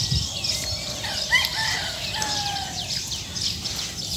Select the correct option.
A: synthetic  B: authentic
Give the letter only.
B